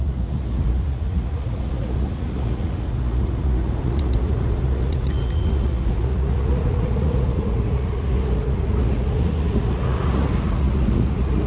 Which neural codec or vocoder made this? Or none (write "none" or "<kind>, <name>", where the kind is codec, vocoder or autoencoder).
vocoder, Vocos